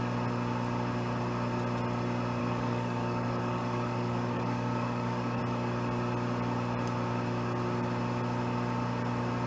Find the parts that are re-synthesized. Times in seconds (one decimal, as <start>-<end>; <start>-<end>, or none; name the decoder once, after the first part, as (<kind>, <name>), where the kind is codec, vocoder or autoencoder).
2.4-5.4 (codec, DAC)